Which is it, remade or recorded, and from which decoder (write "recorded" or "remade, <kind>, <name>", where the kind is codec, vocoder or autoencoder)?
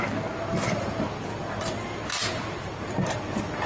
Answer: recorded